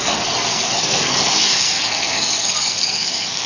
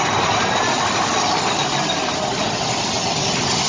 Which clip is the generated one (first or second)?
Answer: first